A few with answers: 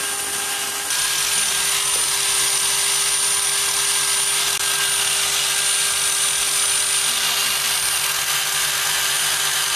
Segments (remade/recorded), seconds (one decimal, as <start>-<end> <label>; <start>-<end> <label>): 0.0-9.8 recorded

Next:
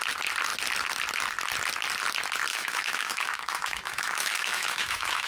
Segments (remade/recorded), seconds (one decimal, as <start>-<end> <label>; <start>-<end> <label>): 0.0-2.5 recorded; 2.5-5.3 remade

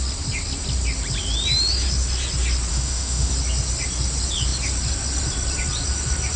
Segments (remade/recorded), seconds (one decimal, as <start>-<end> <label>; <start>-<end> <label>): 0.0-2.7 recorded; 2.7-3.3 remade; 3.3-6.4 recorded

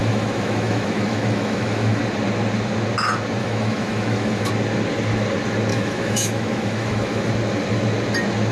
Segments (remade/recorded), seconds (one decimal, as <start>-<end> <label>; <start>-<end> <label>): 0.0-2.0 remade; 2.0-3.4 recorded; 3.4-4.5 remade; 4.5-5.7 recorded; 5.7-7.3 remade; 7.3-8.5 recorded